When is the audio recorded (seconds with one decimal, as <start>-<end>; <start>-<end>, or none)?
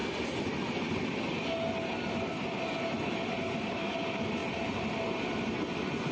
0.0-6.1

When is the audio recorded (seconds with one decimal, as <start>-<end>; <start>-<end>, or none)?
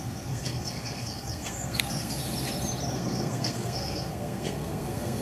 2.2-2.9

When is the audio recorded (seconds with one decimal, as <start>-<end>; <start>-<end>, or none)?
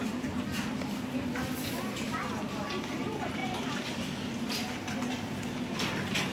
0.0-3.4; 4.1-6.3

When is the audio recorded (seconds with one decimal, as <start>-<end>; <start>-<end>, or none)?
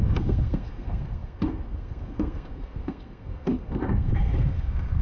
none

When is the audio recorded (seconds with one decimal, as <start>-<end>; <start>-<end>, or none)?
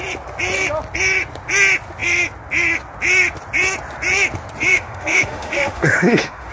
0.0-4.7